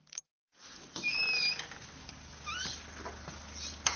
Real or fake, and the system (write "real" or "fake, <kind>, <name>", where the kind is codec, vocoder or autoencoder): real